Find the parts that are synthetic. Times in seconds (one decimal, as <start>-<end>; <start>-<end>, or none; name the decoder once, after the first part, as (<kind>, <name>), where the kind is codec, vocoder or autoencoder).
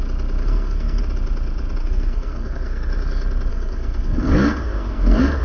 0.4-1.0 (codec, SNAC); 1.8-2.9; 3.5-5.4